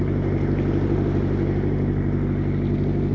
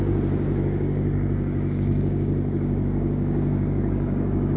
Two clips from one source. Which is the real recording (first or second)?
first